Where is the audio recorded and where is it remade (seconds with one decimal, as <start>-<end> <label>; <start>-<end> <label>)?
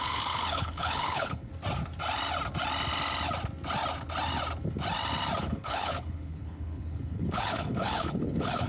0.0-1.5 remade; 1.5-5.4 recorded; 5.4-8.7 remade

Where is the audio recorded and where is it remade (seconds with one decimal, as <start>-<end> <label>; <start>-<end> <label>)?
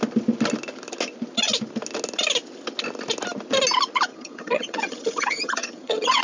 0.0-4.1 recorded; 4.1-6.2 remade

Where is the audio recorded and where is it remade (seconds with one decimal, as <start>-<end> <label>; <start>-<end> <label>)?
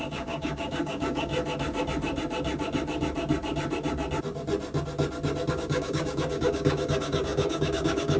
0.0-1.3 remade; 1.3-5.5 recorded; 5.5-8.2 remade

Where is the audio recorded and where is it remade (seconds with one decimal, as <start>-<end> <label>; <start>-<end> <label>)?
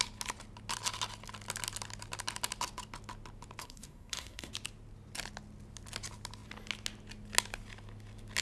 0.0-3.6 recorded; 3.6-4.5 remade; 4.5-8.4 recorded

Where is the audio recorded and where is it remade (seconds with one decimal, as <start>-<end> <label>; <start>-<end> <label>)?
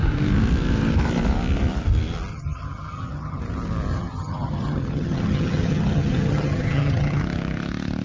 0.0-2.3 recorded; 2.3-3.4 remade; 3.4-3.9 recorded; 3.9-7.2 remade; 7.2-8.0 recorded